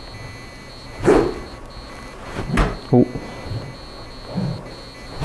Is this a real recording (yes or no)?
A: yes